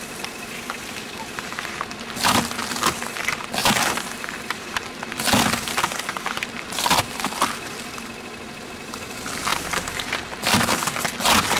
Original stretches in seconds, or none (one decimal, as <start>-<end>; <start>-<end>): 0.0-11.6